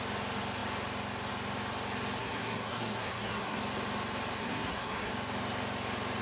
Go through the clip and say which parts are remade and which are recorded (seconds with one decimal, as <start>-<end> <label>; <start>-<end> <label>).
0.0-2.2 recorded; 2.2-3.6 remade; 3.6-4.4 recorded; 4.4-5.1 remade; 5.1-6.2 recorded

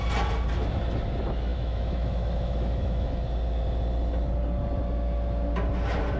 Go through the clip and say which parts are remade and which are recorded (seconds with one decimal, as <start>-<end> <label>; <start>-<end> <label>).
0.0-1.5 recorded; 1.5-3.2 remade; 3.2-6.2 recorded

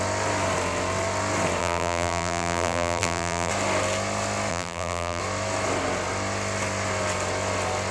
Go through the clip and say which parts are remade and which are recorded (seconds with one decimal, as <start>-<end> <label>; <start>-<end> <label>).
0.0-1.6 recorded; 1.6-3.5 remade; 3.5-4.5 recorded; 4.5-5.2 remade; 5.2-7.9 recorded

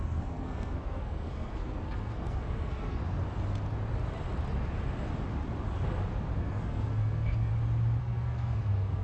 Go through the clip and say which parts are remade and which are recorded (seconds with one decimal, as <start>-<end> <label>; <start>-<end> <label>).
0.0-3.0 remade; 3.0-6.4 recorded; 6.4-7.5 remade; 7.5-8.0 recorded; 8.0-9.0 remade

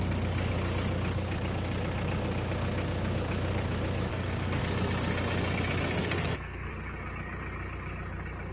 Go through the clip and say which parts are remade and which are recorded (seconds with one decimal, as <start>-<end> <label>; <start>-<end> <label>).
0.0-4.1 recorded; 4.1-4.6 remade; 4.6-6.0 recorded; 6.0-6.7 remade; 6.7-8.5 recorded

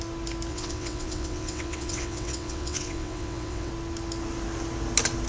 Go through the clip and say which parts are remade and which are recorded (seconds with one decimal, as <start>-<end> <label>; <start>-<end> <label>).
0.0-0.5 recorded; 0.5-3.7 remade; 3.7-5.3 recorded

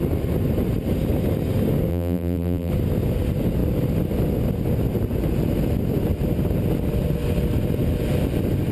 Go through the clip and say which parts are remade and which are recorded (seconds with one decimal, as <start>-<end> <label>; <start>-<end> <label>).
0.0-1.9 recorded; 1.9-2.7 remade; 2.7-8.7 recorded